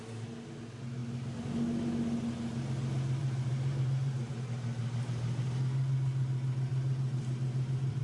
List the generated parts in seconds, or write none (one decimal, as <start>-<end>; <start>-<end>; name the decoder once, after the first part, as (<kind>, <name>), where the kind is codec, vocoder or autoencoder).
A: 3.2-4.3 (vocoder, BigVGAN v2); 4.8-5.4; 6.7-8.0